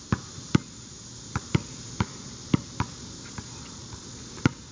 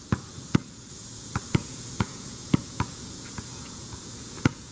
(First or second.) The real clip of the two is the first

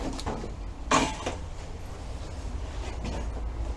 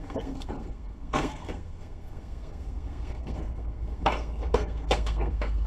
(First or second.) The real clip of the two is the first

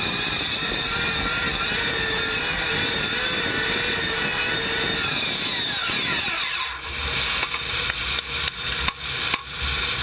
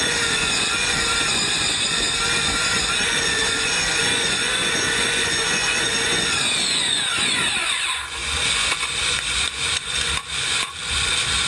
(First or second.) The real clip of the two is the first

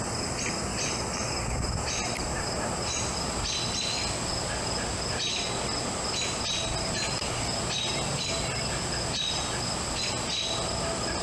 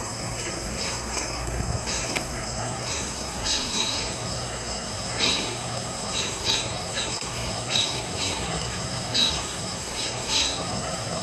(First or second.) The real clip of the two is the first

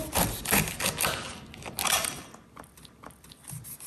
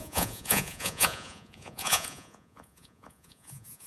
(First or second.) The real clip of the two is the first